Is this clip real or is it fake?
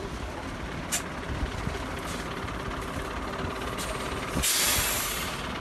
real